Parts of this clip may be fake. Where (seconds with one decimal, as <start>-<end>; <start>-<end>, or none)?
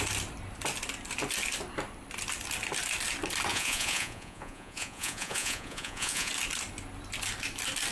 3.5-6.3